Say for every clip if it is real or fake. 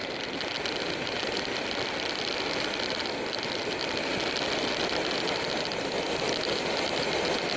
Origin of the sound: real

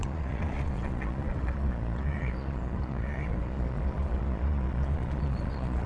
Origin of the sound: fake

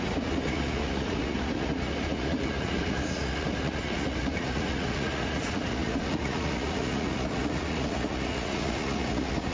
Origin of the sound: fake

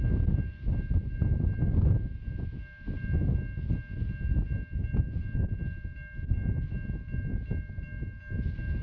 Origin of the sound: real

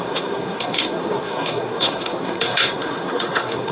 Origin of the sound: fake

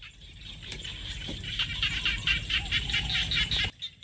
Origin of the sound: real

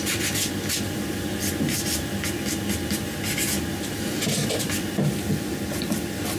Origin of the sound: real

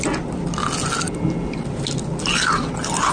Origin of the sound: real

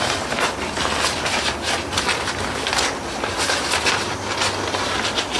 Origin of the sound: real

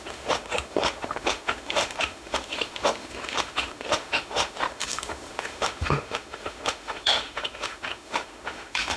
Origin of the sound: fake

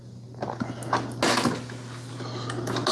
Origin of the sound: real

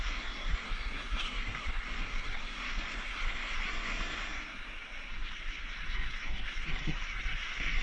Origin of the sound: fake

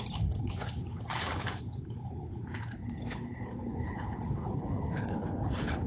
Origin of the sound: fake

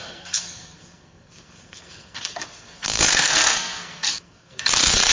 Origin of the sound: fake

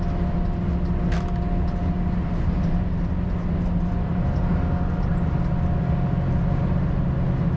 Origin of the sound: real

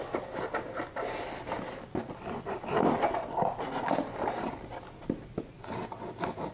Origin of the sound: real